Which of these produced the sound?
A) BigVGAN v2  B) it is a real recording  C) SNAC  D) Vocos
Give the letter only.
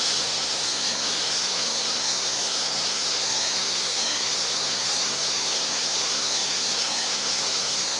C